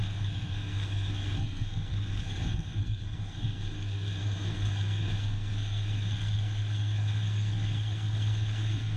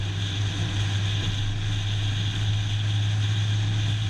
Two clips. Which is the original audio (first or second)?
second